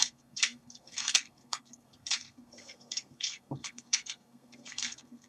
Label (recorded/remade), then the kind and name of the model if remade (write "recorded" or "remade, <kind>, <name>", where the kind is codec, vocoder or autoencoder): remade, codec, SNAC